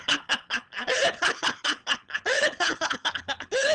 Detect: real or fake fake